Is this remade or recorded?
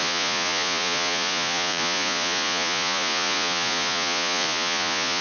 remade